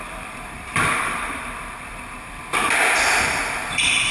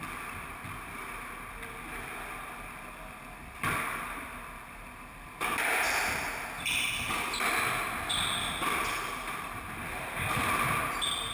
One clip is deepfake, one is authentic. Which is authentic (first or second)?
second